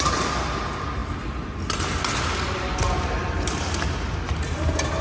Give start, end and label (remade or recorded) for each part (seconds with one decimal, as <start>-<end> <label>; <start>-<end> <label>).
0.0-5.0 recorded